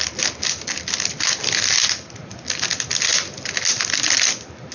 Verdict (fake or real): real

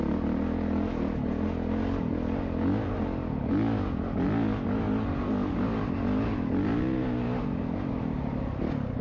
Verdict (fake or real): real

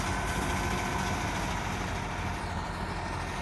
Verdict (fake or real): real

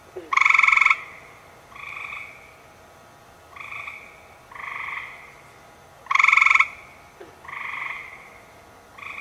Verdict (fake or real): real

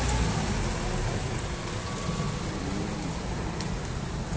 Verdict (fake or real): real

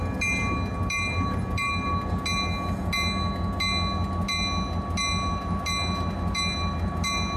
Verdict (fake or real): real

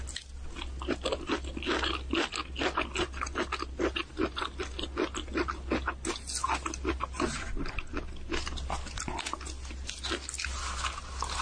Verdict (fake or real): real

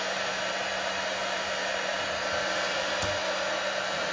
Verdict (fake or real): real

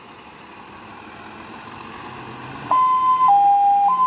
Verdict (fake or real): real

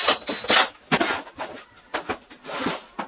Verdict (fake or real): real